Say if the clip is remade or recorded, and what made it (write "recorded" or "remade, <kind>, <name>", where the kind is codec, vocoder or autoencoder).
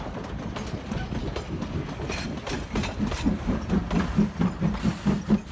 recorded